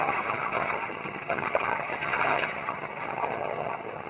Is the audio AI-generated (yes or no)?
yes